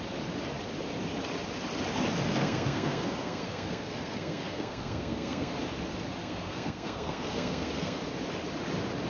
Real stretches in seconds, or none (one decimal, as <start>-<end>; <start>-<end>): 0.0-2.3; 5.5-6.2; 8.0-9.1